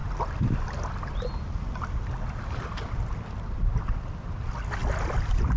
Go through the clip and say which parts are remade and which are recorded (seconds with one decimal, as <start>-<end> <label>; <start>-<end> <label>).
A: 0.0-3.4 recorded; 3.4-4.8 remade; 4.8-5.6 recorded